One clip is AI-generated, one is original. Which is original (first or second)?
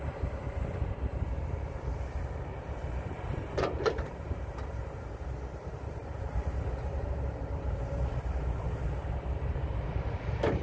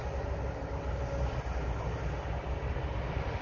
second